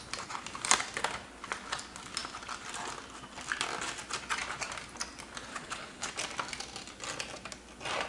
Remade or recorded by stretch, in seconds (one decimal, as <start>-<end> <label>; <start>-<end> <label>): 0.0-5.5 recorded; 5.5-6.1 remade; 6.1-8.1 recorded